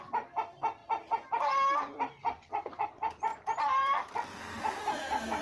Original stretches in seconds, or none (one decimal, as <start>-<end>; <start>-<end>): 0.0-3.3